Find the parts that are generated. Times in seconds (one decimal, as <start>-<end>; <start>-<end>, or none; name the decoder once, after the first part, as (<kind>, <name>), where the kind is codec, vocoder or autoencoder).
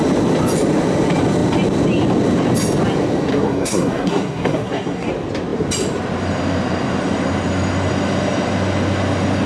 3.3-5.1 (codec, SNAC)